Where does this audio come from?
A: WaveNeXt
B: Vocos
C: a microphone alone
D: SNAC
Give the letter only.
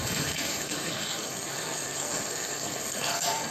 D